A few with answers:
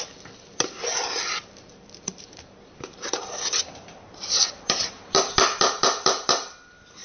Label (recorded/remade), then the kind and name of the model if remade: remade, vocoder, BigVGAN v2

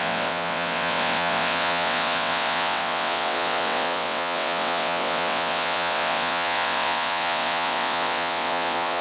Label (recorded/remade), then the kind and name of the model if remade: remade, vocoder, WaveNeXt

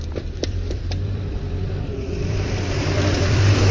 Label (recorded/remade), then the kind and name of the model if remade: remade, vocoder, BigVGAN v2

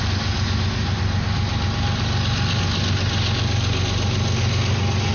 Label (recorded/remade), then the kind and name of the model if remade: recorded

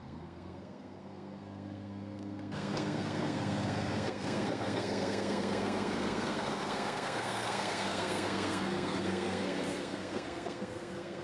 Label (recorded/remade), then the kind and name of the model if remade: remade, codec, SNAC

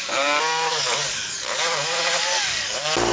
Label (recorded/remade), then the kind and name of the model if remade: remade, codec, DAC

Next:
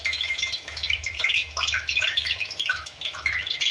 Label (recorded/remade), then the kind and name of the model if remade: remade, autoencoder, DAC-VAE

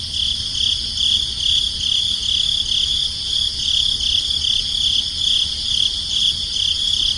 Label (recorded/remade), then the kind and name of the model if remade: recorded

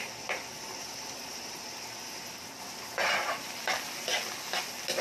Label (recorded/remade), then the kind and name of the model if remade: recorded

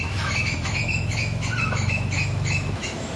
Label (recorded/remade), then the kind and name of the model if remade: remade, autoencoder, DAC-VAE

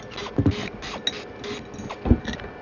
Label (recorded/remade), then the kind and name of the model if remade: recorded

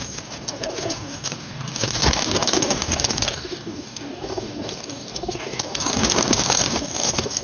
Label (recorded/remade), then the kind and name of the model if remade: remade, codec, DAC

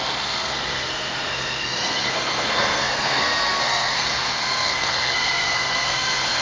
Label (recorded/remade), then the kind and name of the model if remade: remade, codec, SNAC